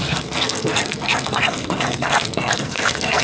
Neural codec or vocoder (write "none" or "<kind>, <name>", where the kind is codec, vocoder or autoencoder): codec, SNAC